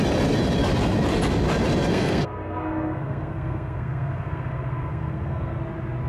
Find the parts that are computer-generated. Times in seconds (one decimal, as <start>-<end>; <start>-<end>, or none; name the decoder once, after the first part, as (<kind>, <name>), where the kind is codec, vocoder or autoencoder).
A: 1.9-5.6 (codec, SNAC)